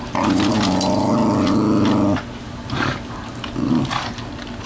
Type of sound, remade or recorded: recorded